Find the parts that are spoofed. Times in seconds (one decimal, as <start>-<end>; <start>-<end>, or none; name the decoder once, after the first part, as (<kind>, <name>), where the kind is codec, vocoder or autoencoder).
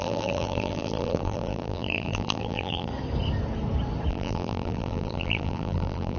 0.0-2.9 (vocoder, BigVGAN v2); 4.1-6.2